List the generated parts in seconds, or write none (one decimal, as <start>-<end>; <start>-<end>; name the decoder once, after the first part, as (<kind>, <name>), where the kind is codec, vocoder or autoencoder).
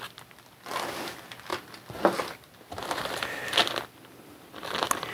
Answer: none